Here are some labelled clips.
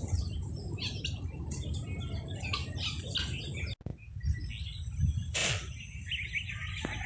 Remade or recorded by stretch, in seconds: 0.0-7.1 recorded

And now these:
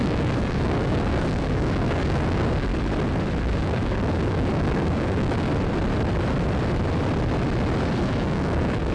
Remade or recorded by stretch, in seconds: 0.0-2.7 remade; 2.7-3.4 recorded; 3.4-5.5 remade; 5.5-8.0 recorded; 8.0-8.9 remade

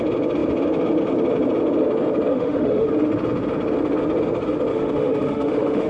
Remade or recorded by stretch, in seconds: 0.0-2.3 recorded; 2.3-2.9 remade; 2.9-4.7 recorded; 4.7-5.9 remade

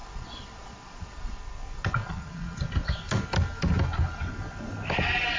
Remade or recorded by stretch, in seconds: 0.0-1.4 remade; 1.4-2.0 recorded; 2.0-2.6 remade; 2.6-5.4 recorded

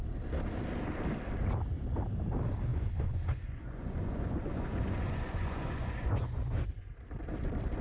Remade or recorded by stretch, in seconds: 0.0-2.7 recorded; 2.7-6.9 remade; 6.9-7.8 recorded

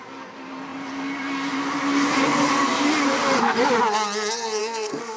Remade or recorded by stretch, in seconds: 0.0-4.6 recorded; 4.6-5.2 remade

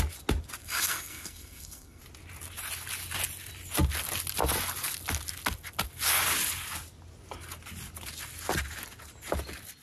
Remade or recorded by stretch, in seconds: 0.0-0.6 recorded; 0.6-2.0 remade; 2.0-9.8 recorded